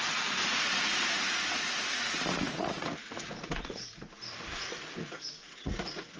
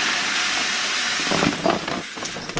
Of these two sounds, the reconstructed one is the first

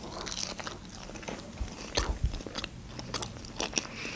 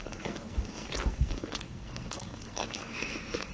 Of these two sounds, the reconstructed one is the second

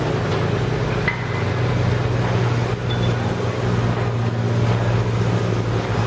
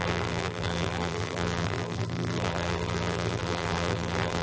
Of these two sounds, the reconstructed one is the second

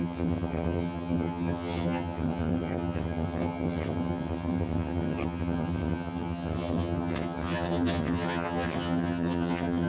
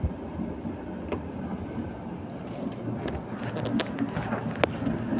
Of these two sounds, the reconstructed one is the first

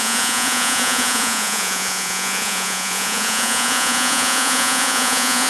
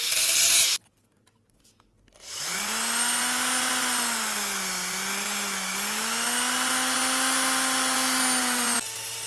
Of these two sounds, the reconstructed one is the first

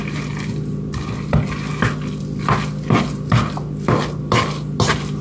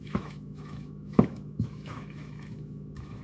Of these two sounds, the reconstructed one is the second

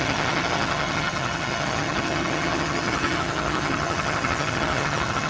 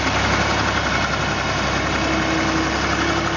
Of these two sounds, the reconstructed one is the first